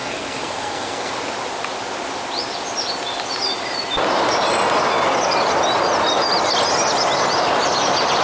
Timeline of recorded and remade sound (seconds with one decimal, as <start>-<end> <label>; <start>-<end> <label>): 0.0-1.1 remade; 1.1-8.2 recorded